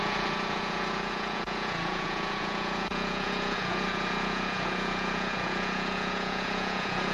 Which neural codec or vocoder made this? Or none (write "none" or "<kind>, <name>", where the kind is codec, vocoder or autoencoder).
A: vocoder, Vocos